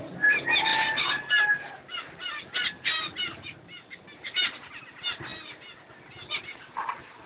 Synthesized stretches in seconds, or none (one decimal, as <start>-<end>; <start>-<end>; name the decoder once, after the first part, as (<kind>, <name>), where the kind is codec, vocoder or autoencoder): none